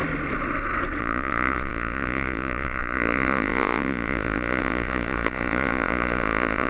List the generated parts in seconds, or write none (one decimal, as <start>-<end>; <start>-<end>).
1.0-6.7